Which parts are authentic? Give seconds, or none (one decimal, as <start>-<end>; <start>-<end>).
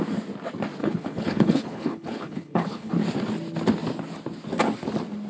0.0-0.8; 2.9-5.3